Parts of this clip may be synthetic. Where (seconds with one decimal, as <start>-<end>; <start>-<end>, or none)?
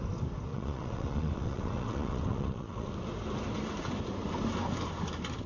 0.5-2.9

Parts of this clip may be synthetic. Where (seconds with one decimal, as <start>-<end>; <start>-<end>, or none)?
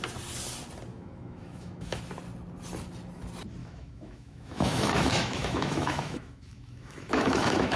0.9-2.0; 3.6-7.8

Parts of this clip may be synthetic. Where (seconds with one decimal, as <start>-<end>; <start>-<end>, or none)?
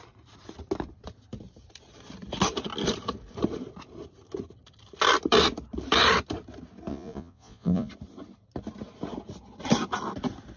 6.9-7.9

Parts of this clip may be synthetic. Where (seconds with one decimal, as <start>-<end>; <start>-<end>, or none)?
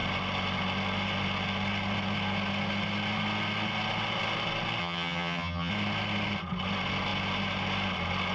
4.8-5.7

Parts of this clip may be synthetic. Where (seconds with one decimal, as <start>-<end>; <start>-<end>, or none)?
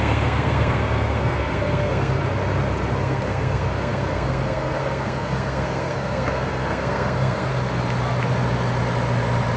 0.0-2.2; 2.9-7.5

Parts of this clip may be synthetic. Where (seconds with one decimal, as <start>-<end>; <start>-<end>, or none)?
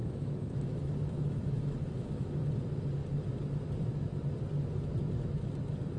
0.0-2.5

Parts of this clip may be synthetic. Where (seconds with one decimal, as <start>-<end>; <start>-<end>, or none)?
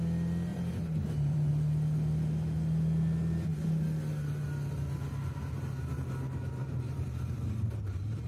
0.5-1.5; 6.6-8.3